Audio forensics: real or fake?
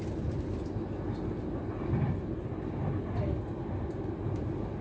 real